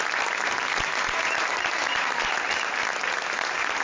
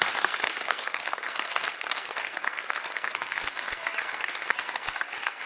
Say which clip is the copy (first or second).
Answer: second